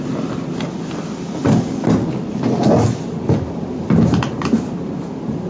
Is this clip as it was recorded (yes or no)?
yes